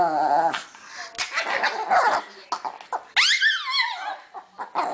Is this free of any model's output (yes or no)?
yes